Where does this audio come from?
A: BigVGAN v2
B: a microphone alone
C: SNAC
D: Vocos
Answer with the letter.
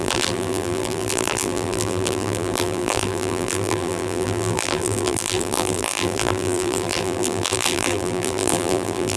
A